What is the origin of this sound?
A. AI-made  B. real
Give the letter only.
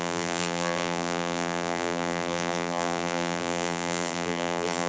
A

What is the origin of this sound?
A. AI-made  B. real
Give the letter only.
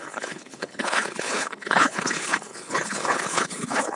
A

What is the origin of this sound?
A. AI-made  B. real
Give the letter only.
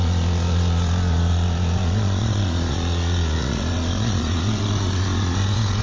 A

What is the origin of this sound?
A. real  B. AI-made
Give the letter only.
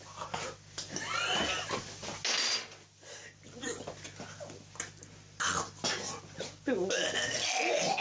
A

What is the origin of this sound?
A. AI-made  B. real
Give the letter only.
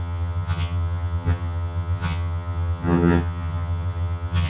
A